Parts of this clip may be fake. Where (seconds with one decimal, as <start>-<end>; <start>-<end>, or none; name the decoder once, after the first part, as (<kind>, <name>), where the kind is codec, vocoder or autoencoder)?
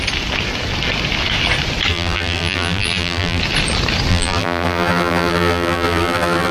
1.9-3.4 (vocoder, BigVGAN v2); 4.1-6.5